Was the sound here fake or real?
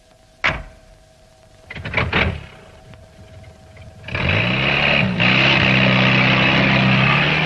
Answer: real